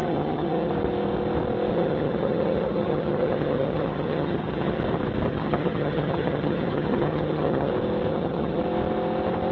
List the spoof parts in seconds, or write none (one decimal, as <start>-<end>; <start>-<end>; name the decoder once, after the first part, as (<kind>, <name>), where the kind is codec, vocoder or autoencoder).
0.0-0.7 (vocoder, HiFi-GAN); 1.7-4.8; 5.3-7.7; 8.1-8.6

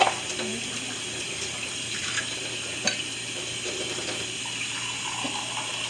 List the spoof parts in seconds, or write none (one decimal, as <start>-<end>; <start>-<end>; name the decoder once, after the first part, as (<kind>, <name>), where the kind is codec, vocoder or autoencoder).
none

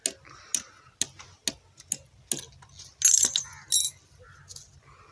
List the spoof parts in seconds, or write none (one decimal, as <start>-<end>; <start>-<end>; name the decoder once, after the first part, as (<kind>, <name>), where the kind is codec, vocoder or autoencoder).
none

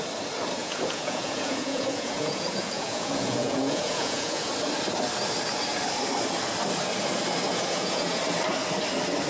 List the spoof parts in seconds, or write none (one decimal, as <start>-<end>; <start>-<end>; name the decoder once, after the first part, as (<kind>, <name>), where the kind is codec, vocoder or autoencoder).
0.6-4.5 (vocoder, Vocos); 7.5-8.2

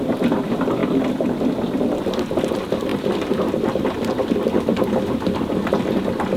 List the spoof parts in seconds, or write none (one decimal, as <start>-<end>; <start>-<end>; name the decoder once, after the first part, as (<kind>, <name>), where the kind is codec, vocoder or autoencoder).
none

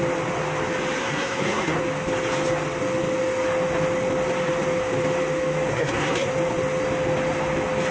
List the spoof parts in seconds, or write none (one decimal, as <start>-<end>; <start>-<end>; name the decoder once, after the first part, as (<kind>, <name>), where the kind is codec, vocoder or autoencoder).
1.0-1.8 (codec, SNAC); 5.7-6.3

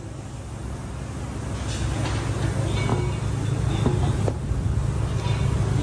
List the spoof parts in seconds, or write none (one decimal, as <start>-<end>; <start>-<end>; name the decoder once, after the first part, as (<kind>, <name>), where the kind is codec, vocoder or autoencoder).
none

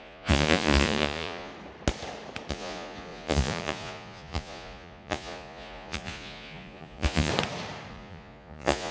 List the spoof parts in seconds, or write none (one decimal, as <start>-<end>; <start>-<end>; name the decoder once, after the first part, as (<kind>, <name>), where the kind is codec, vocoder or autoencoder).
0.0-1.5 (vocoder, Vocos); 2.5-7.3; 7.9-8.9